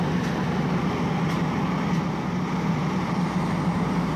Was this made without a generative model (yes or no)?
yes